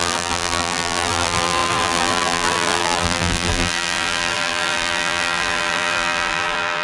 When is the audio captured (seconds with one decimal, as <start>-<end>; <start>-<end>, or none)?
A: none